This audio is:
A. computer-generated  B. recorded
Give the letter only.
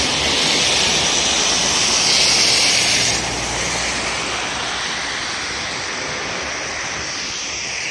B